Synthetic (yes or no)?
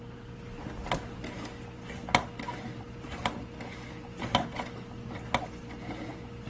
no